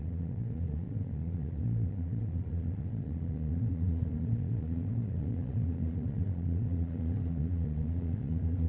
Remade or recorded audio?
remade